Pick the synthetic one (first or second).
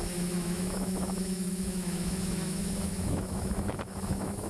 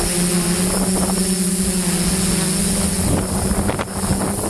first